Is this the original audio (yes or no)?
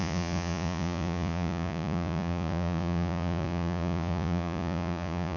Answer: no